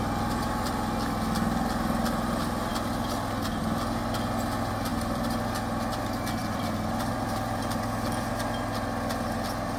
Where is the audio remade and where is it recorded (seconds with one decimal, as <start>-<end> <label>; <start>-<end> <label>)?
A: 0.0-4.9 recorded; 4.9-5.5 remade; 5.5-6.4 recorded; 6.4-8.3 remade; 8.3-9.8 recorded